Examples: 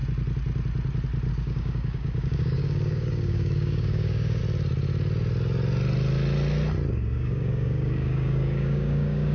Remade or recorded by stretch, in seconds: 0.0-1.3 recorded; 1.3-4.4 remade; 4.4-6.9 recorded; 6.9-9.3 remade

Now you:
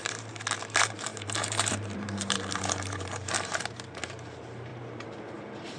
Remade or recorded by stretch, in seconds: 0.0-4.7 remade; 4.7-5.8 recorded

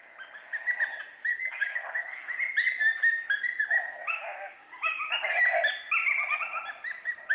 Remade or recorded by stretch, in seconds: 0.0-1.3 recorded; 1.3-2.0 remade; 2.0-4.1 recorded; 4.1-5.1 remade; 5.1-7.3 recorded

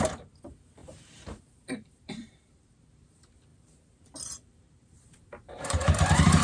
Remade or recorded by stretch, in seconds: 0.0-0.8 recorded; 0.8-2.9 remade; 2.9-3.5 recorded; 3.5-6.4 remade